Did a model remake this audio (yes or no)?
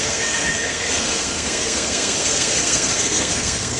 yes